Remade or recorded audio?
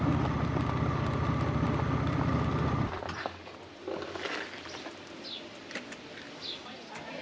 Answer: recorded